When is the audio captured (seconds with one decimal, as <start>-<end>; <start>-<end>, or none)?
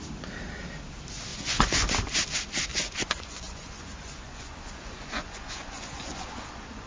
0.0-1.3; 1.9-2.7